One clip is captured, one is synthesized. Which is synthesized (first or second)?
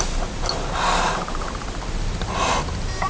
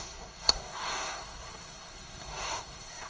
second